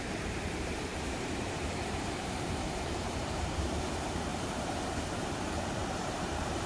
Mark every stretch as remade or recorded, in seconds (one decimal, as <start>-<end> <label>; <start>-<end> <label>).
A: 0.0-0.9 recorded; 0.9-3.8 remade; 3.8-4.3 recorded; 4.3-5.2 remade; 5.2-6.0 recorded; 6.0-6.7 remade